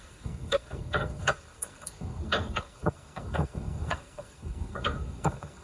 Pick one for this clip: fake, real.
fake